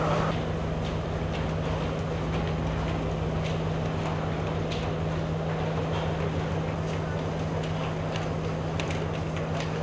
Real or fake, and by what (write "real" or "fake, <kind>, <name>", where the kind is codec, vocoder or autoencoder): real